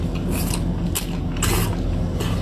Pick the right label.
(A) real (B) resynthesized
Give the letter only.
A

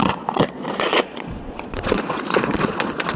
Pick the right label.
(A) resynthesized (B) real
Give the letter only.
A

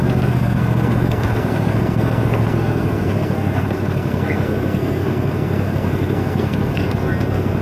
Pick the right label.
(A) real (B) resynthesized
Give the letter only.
B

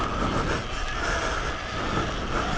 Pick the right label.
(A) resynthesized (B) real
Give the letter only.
B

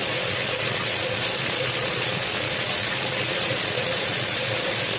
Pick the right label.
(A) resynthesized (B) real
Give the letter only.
A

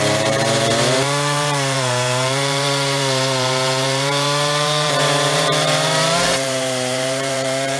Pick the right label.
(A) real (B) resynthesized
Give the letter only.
B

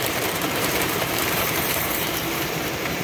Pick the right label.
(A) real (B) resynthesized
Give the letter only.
B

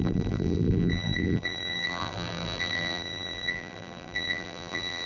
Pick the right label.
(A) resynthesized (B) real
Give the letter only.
A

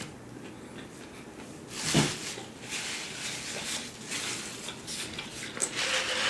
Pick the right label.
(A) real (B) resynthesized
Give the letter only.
A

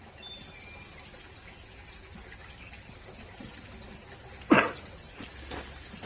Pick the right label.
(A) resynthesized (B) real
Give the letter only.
B